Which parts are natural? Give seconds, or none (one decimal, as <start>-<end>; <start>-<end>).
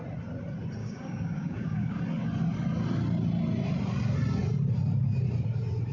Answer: 0.0-0.8; 2.0-5.9